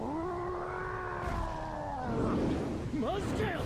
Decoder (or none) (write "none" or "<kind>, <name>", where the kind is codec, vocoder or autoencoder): none